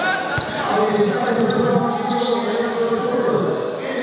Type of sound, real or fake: real